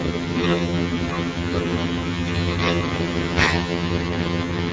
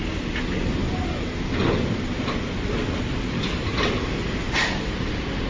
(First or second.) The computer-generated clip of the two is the first